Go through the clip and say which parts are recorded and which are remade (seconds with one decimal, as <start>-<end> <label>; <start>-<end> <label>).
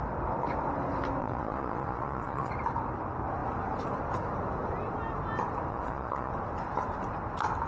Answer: 0.0-1.2 recorded; 1.2-2.5 remade; 2.5-5.7 recorded; 5.7-6.3 remade; 6.3-7.7 recorded